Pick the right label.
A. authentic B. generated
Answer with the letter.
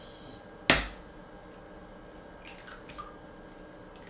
A